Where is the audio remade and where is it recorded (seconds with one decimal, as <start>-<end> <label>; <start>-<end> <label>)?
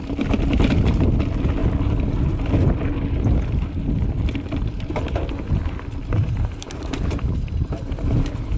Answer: 0.0-6.2 recorded; 6.2-7.8 remade; 7.8-8.6 recorded